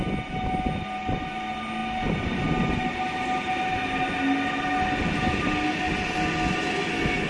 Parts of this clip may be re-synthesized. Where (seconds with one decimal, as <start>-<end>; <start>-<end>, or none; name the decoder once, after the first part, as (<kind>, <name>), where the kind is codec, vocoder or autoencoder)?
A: none